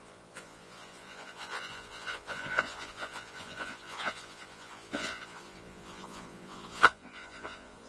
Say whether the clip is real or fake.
fake